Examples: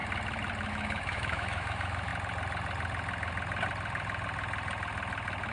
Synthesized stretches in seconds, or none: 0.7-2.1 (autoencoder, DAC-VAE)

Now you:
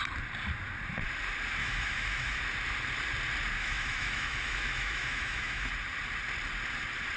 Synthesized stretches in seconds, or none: 1.6-2.4 (autoencoder, DAC-VAE); 3.6-5.7